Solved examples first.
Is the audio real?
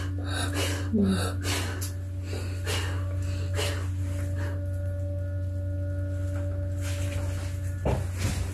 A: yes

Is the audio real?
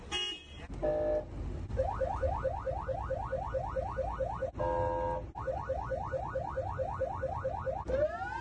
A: yes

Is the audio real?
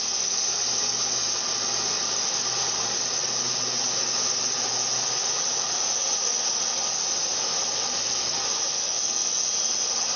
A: yes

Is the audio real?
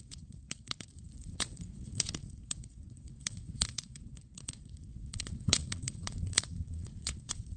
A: no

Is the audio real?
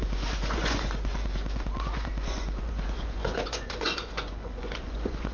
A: no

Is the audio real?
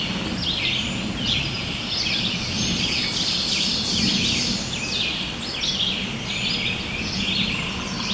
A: yes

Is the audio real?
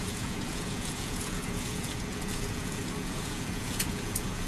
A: no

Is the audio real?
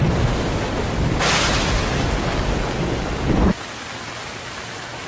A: yes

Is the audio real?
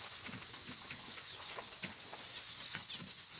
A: no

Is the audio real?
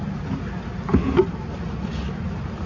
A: yes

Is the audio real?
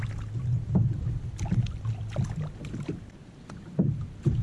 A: yes